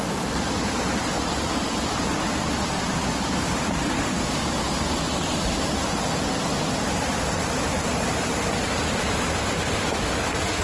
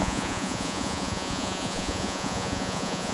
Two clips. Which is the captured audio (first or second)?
first